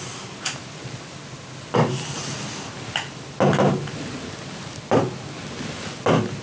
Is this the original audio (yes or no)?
yes